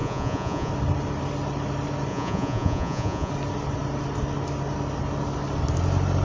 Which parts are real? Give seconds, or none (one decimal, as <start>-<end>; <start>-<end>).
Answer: 0.7-2.1; 3.3-6.2